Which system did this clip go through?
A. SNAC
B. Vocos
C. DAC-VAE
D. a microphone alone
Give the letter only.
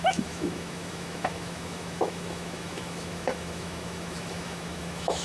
C